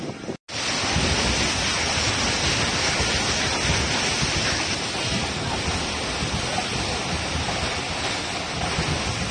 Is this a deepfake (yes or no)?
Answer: no